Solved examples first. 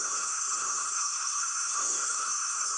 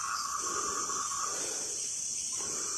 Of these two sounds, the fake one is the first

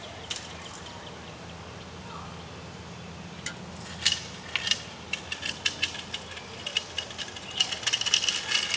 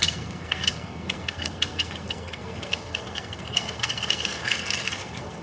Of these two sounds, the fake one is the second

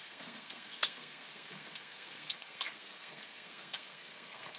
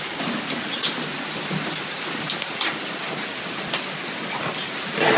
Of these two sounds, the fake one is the first